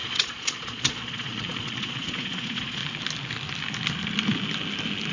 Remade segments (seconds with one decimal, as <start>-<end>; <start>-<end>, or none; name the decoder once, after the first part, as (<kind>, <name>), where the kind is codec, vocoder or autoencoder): 0.0-2.8 (vocoder, Vocos)